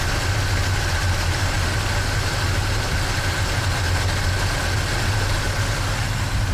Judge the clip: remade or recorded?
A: recorded